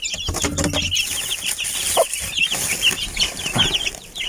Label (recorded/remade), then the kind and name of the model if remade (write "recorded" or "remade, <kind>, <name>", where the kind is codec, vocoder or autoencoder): recorded